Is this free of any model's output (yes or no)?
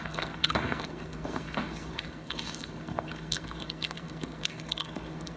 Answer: no